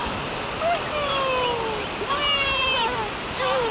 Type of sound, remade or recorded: recorded